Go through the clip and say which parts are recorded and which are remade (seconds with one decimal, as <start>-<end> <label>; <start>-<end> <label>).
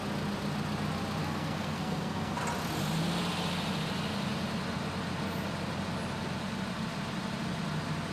0.0-1.2 recorded; 1.2-2.4 remade; 2.4-8.1 recorded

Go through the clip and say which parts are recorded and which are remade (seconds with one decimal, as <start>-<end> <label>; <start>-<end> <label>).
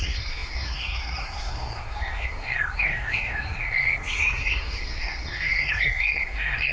0.0-6.7 remade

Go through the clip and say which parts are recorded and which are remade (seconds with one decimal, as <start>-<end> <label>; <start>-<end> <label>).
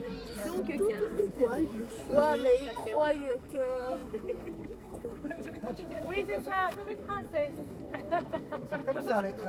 0.0-0.4 remade; 0.4-0.9 recorded; 0.9-9.5 remade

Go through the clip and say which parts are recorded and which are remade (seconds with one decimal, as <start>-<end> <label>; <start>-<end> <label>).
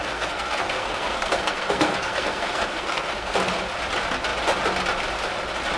0.0-3.5 remade; 3.5-5.8 recorded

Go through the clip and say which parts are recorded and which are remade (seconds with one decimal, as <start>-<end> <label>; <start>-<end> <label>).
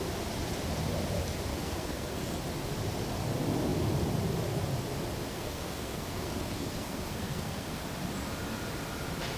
0.0-1.5 recorded; 1.5-2.4 remade; 2.4-5.3 recorded; 5.3-7.8 remade; 7.8-9.4 recorded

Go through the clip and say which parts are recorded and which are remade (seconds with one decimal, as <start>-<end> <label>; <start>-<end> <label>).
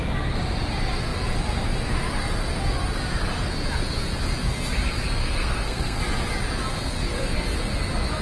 0.0-5.2 recorded; 5.2-6.0 remade; 6.0-8.2 recorded